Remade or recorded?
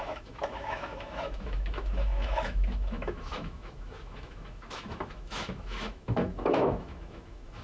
remade